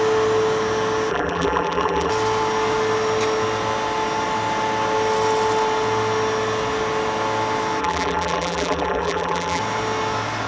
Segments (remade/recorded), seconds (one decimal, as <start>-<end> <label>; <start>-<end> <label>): 0.0-1.1 recorded; 1.1-2.1 remade; 2.1-7.8 recorded; 7.8-9.6 remade; 9.6-10.5 recorded